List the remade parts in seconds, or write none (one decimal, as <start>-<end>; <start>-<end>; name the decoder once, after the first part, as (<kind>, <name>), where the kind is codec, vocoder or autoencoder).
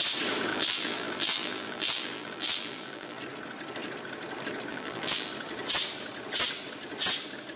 0.5-3.2 (vocoder, BigVGAN v2); 4.7-5.3